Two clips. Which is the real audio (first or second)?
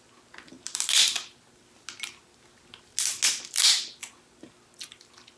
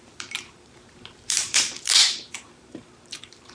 first